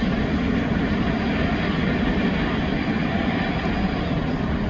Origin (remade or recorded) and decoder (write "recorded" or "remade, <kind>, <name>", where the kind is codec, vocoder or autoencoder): recorded